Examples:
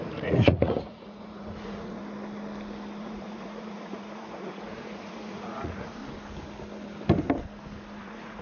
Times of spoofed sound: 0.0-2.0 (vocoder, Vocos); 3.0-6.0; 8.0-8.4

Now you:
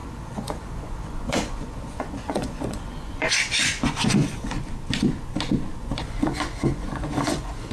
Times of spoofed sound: 0.0-4.6 (vocoder, Vocos); 5.8-7.7

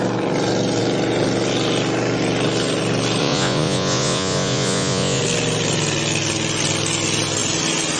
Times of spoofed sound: 3.2-5.2 (vocoder, Vocos)

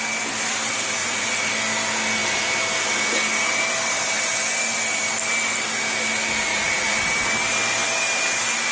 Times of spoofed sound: 1.0-1.5 (vocoder, Vocos); 6.5-7.0

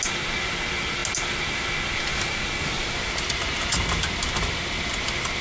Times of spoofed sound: none

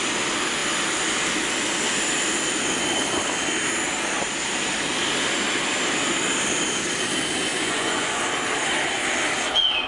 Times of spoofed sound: 7.5-8.2 (vocoder, Vocos)

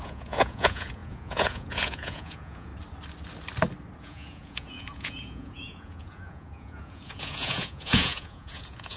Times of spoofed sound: 0.0-2.7 (vocoder, Vocos); 4.0-9.0

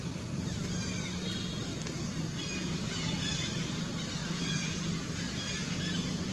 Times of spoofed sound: 4.2-6.3 (vocoder, Vocos)